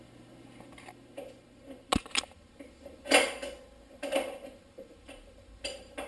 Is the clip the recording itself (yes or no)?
yes